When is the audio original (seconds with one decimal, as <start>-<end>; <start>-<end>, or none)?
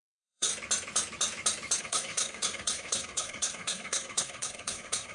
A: 0.5-1.8